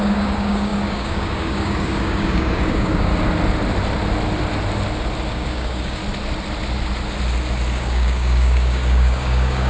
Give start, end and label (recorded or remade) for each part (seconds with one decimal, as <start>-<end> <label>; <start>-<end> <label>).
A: 0.0-3.1 remade; 3.1-5.3 recorded; 5.3-6.0 remade; 6.0-7.7 recorded; 7.7-9.7 remade